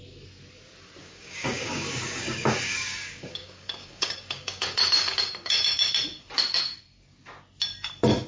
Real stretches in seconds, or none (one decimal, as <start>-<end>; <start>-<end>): 0.0-1.0; 5.9-8.3